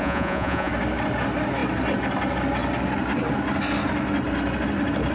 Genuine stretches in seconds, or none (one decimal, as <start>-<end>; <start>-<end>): 0.7-5.1